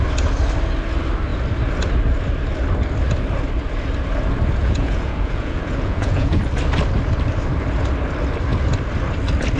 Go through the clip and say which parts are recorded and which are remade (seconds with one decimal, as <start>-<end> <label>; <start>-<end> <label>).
0.0-4.6 recorded; 4.6-6.4 remade; 6.4-9.6 recorded